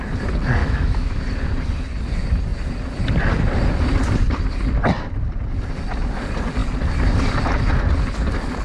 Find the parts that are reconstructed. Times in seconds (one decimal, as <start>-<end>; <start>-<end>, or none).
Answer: 0.6-1.2